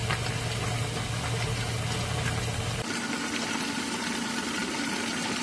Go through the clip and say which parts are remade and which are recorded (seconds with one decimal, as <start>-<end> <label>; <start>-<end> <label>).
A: 0.0-3.2 recorded; 3.2-5.4 remade